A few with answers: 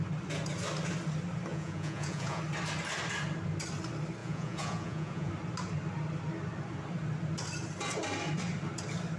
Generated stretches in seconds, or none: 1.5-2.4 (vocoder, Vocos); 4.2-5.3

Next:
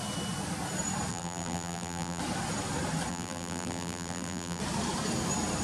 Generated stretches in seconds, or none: 1.1-2.2 (vocoder, BigVGAN v2); 3.1-4.6

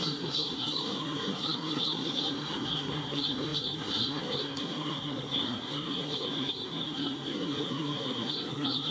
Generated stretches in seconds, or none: 0.0-8.9 (codec, SNAC)

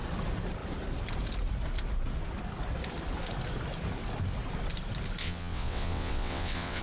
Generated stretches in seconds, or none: 5.2-6.8 (vocoder, WaveNeXt)

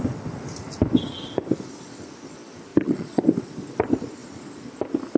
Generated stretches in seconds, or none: 2.7-3.2 (vocoder, Vocos)

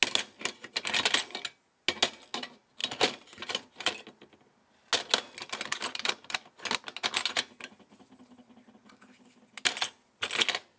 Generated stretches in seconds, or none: 5.4-6.5 (vocoder, BigVGAN v2)

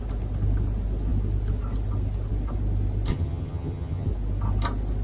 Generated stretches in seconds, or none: 3.1-4.1 (vocoder, HiFi-GAN)